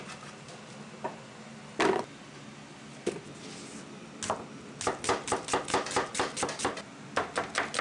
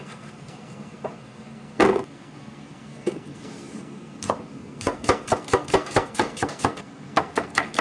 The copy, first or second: second